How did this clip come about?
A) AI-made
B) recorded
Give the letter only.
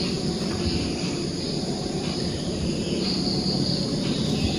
A